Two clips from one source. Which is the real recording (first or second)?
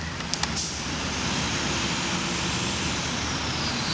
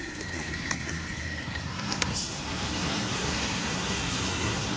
first